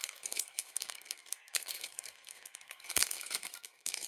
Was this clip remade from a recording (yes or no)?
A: yes